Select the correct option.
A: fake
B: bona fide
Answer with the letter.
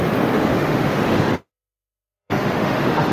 A